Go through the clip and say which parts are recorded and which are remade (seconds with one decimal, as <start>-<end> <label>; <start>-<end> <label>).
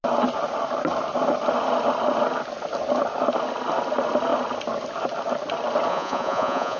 0.0-5.9 recorded; 5.9-6.8 remade